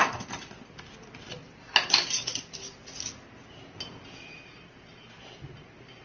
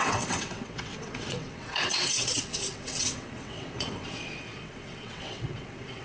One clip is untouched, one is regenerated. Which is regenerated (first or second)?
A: second